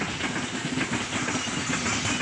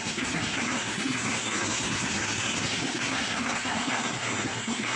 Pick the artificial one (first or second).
second